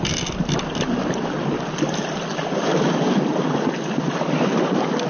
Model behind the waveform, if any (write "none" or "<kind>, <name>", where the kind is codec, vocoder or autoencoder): none